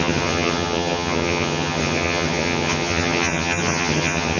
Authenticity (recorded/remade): remade